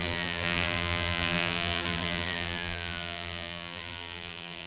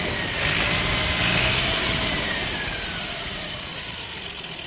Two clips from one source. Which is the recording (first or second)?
second